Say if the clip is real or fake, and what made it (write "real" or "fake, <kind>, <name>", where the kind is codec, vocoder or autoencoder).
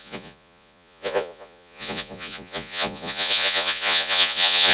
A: fake, vocoder, Vocos